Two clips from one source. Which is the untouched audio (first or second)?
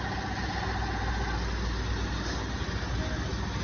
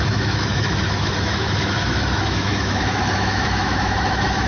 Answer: first